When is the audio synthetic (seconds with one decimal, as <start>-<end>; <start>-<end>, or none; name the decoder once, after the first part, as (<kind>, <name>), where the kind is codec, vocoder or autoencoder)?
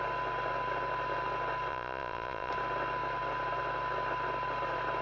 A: 1.7-2.5 (vocoder, Vocos)